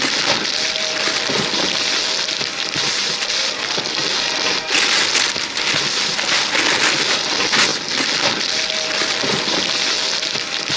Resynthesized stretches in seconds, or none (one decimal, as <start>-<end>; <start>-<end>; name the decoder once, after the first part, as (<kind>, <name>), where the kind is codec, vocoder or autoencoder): none